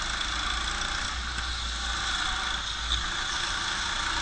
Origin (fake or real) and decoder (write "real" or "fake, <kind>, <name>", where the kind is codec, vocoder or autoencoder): real